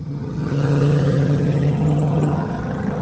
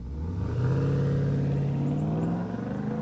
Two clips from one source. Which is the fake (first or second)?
first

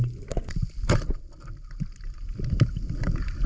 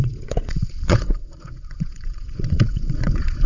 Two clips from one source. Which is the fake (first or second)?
second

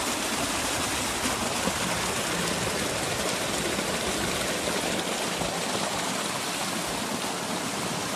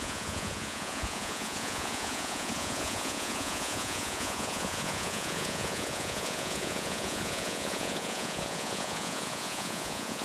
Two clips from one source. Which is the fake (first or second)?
second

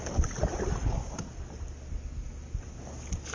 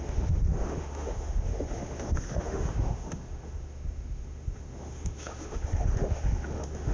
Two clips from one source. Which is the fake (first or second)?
second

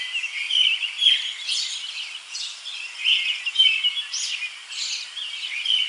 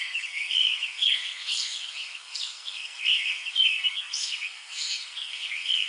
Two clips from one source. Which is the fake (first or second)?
second